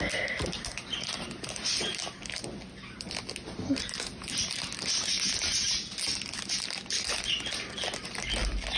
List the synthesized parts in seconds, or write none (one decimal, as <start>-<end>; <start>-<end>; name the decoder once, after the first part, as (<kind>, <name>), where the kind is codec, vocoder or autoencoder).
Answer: none